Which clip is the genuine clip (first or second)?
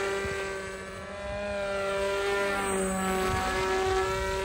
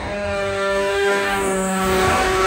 first